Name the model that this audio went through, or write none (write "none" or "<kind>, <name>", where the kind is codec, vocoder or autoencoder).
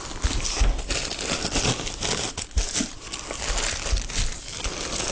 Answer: none